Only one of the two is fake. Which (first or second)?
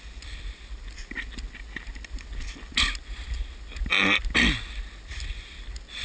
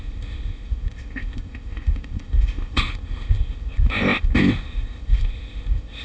second